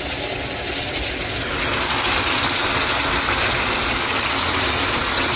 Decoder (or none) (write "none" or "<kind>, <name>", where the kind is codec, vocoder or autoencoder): none